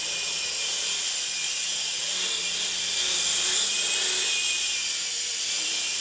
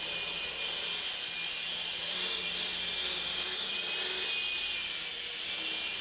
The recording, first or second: second